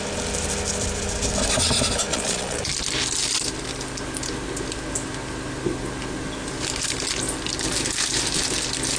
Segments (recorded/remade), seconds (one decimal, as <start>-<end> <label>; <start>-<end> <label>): 0.0-2.1 recorded; 2.1-2.6 remade; 2.6-9.0 recorded